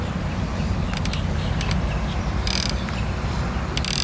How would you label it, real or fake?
real